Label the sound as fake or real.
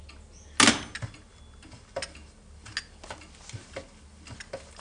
real